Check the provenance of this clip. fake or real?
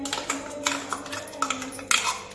real